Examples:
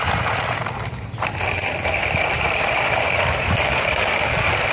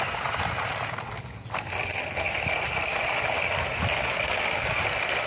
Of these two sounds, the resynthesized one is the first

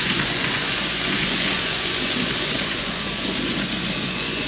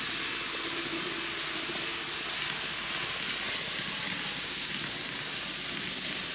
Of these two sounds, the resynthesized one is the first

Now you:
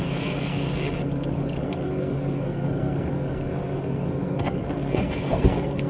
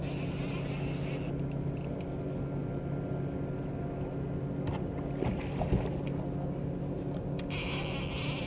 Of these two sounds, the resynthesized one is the first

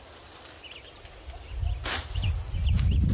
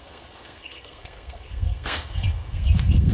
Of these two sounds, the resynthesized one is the second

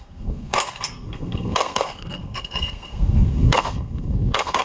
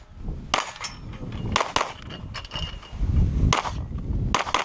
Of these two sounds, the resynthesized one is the first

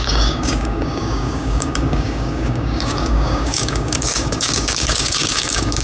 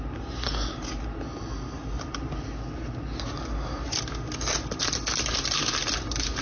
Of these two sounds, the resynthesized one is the first